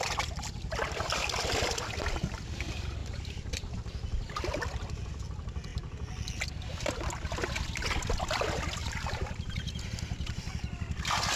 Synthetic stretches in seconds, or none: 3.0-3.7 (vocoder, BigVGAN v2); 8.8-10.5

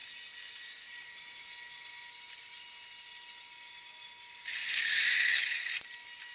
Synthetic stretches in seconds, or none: none

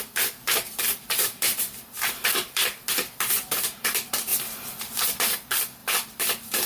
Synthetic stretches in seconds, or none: 0.0-6.7 (vocoder, BigVGAN v2)